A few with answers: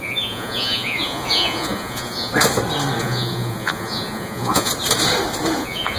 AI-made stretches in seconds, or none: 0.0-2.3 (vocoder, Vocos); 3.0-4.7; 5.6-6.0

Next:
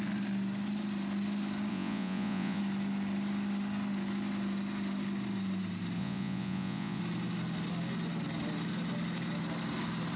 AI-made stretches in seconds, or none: 1.7-2.6 (vocoder, Vocos); 6.0-7.0

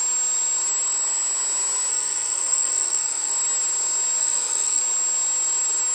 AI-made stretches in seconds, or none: 1.9-3.3 (codec, SNAC); 4.2-4.8